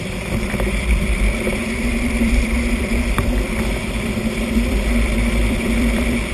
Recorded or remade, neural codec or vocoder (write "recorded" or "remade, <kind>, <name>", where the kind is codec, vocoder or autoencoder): remade, vocoder, BigVGAN v2